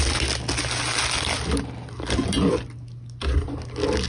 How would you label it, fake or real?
real